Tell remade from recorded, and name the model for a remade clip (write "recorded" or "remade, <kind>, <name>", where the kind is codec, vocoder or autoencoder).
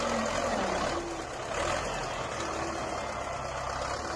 recorded